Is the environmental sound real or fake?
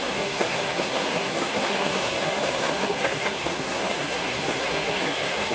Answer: fake